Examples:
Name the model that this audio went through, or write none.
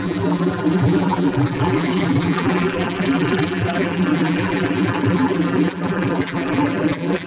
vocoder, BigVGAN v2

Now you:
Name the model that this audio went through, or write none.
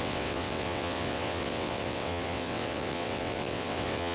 vocoder, WaveNeXt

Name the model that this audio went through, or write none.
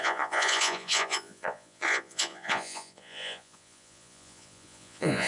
vocoder, Vocos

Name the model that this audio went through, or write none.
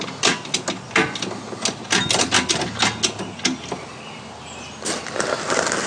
none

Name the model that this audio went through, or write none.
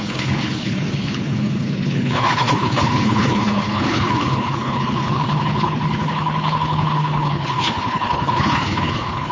codec, HILCodec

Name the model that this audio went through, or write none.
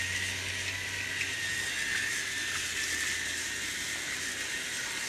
none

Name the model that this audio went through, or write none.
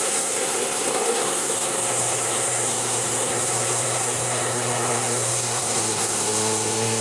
codec, SNAC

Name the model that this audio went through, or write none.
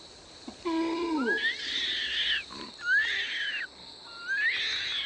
none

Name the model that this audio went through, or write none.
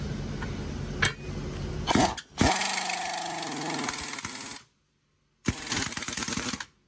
none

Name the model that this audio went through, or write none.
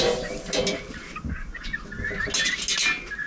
none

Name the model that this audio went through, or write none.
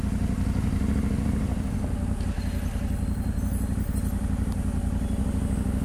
none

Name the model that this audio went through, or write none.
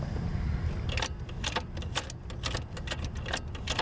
none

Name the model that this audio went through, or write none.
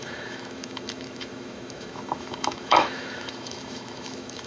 autoencoder, DAC-VAE